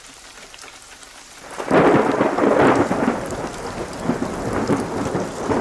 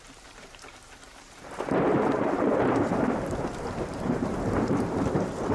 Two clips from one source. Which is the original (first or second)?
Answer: first